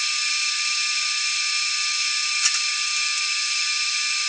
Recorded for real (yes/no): yes